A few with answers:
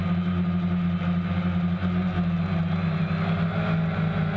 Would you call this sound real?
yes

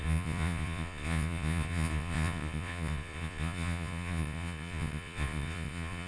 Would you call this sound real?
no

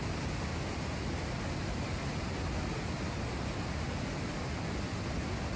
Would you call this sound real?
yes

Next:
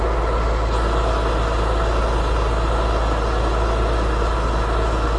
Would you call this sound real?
yes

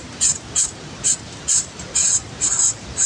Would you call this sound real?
yes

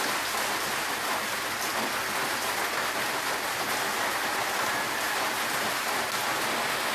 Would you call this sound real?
yes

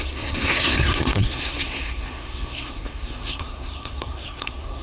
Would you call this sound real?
no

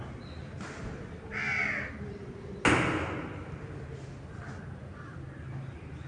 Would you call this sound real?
yes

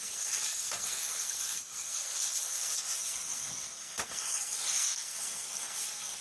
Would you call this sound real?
no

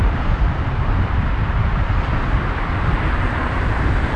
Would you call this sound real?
no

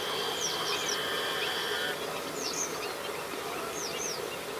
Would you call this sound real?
yes